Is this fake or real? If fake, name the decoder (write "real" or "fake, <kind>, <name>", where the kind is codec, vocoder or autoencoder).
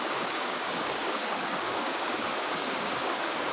fake, codec, DAC